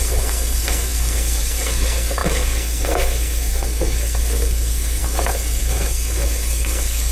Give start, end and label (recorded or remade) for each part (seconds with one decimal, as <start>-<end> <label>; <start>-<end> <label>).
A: 0.0-7.1 remade